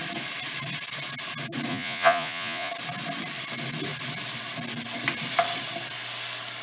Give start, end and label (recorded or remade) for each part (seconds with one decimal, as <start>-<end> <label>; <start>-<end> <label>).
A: 0.0-1.7 recorded; 1.7-2.7 remade; 2.7-6.6 recorded